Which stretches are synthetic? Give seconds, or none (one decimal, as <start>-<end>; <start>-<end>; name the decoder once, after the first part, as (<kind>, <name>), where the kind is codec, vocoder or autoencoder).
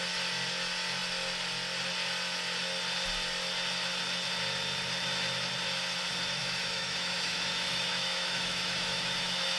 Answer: 6.4-9.6 (autoencoder, DAC-VAE)